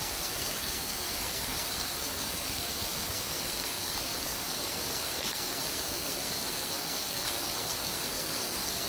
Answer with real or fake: fake